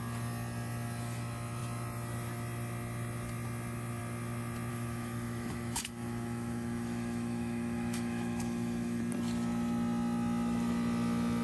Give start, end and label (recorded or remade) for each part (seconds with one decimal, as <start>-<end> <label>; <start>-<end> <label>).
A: 0.0-4.7 recorded; 4.7-9.0 remade; 9.0-11.4 recorded